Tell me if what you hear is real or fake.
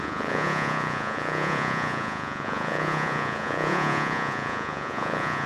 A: fake